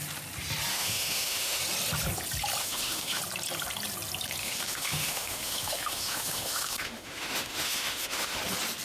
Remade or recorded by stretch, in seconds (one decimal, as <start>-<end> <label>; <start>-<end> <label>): 0.0-0.7 recorded; 0.7-1.6 remade; 1.6-2.6 recorded; 2.6-3.2 remade; 3.2-4.4 recorded; 4.4-8.4 remade; 8.4-8.8 recorded